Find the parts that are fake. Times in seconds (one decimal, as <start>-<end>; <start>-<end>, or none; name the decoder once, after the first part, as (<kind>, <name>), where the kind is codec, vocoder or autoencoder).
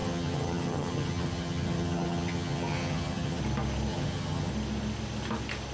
0.0-3.4 (vocoder, HiFi-GAN); 3.9-4.5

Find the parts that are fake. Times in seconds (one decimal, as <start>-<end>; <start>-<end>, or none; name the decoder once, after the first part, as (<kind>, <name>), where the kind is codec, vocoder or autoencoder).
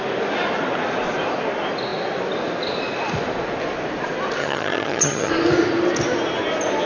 4.4-5.3 (vocoder, HiFi-GAN)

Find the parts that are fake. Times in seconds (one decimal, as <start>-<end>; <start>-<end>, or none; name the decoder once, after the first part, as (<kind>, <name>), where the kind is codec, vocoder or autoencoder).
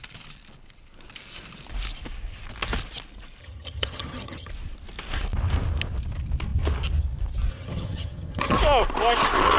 3.4-4.5 (vocoder, HiFi-GAN); 7.5-8.6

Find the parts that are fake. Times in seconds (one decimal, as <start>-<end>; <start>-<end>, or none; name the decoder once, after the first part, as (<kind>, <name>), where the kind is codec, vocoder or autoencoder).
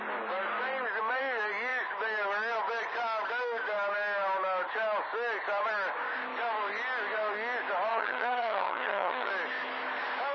7.9-9.3 (vocoder, HiFi-GAN)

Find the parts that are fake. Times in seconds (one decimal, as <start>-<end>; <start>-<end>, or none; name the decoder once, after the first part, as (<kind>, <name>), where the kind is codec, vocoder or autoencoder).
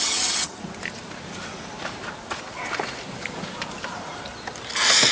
0.0-0.6 (vocoder, HiFi-GAN)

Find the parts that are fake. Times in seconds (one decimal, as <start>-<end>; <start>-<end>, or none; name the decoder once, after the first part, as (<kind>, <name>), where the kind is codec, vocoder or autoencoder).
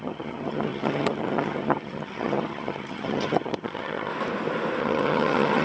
0.0-4.1 (vocoder, HiFi-GAN); 4.8-5.6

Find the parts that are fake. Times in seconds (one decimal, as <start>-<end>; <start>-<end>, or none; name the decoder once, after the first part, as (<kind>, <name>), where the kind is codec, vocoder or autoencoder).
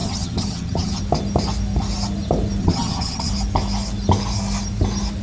0.0-1.0 (vocoder, HiFi-GAN); 2.6-3.3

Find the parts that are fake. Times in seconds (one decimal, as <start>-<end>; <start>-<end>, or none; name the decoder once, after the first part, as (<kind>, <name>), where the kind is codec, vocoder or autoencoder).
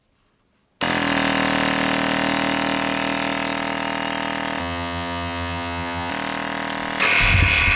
4.6-6.1 (vocoder, HiFi-GAN)